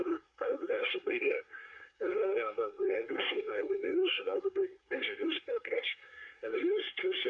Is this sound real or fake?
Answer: fake